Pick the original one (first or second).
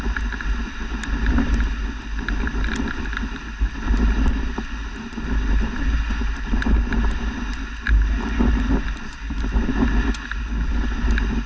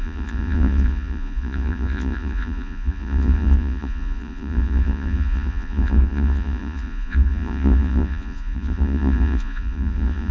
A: first